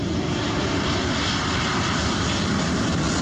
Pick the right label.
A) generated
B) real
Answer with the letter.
A